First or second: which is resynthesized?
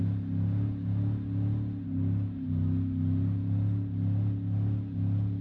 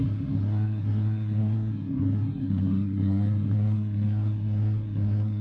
second